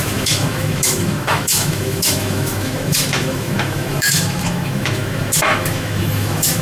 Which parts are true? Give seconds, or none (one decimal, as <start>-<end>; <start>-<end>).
none